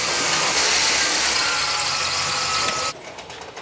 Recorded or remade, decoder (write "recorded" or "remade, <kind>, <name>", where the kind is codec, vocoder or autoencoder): recorded